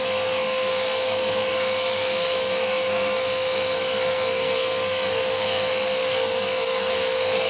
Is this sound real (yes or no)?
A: no